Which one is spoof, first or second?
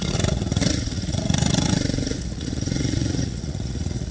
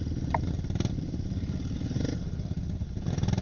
first